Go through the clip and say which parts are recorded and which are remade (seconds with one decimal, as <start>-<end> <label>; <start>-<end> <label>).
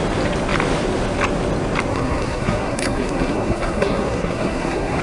0.0-1.9 recorded; 1.9-5.0 remade